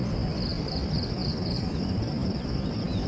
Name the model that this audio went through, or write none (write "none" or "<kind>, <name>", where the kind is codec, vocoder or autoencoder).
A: vocoder, BigVGAN v2